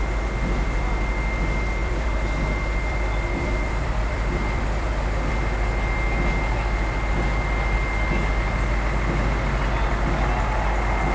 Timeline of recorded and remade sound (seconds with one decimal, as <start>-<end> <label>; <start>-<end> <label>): 0.0-1.8 recorded; 1.8-4.9 remade; 4.9-11.1 recorded